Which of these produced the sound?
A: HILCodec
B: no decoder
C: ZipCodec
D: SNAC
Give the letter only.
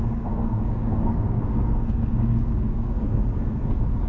D